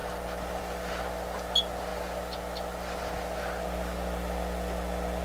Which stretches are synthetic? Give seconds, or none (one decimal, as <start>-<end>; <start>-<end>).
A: none